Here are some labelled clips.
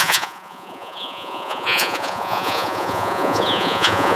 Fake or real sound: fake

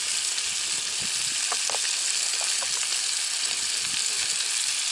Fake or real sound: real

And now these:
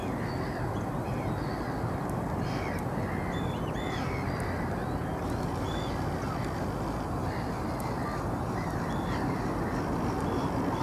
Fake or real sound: real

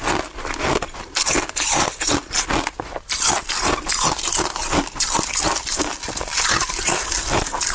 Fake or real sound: real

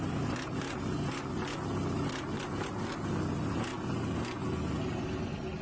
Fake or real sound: real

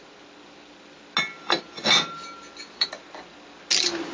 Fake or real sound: real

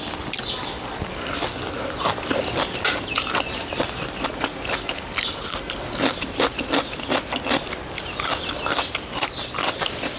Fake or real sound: real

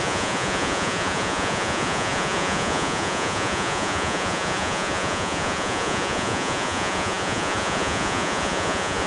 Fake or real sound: fake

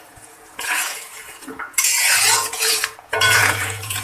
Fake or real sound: fake